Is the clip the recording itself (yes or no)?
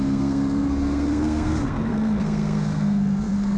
no